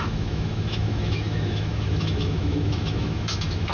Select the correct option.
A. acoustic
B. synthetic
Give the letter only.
B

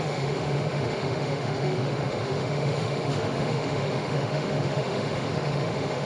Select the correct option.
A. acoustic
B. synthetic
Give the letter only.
B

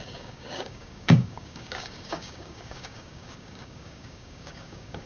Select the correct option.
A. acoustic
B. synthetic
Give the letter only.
B